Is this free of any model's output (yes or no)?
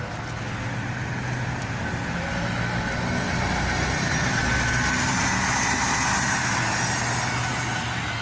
yes